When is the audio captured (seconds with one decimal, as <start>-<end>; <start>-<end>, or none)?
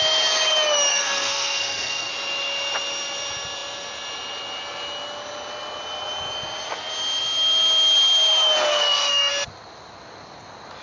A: 0.0-0.9; 2.1-8.7; 9.3-10.8